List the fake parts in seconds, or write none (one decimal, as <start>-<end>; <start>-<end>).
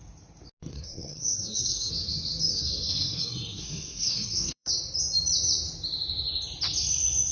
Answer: 0.7-1.9; 2.5-4.7